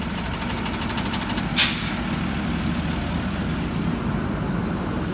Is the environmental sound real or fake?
real